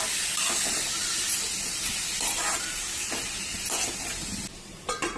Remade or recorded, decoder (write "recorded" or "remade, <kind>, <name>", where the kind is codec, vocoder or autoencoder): recorded